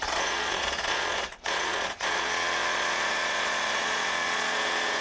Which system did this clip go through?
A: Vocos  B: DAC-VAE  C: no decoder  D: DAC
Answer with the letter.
A